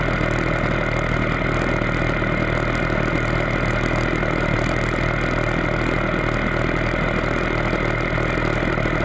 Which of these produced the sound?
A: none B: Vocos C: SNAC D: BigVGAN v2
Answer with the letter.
A